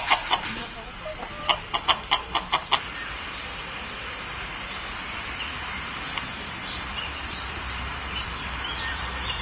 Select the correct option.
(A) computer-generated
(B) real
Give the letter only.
A